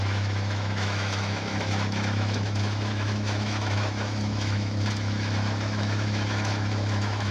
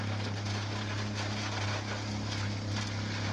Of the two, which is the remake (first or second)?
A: first